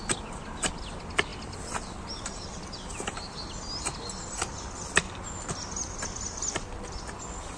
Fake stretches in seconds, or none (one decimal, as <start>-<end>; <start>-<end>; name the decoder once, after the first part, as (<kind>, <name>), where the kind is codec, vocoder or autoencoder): none